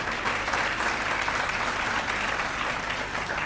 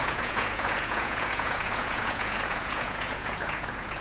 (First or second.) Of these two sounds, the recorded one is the first